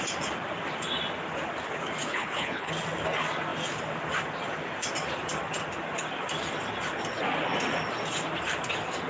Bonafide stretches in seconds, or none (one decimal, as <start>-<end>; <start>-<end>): 0.0-2.1; 2.7-9.1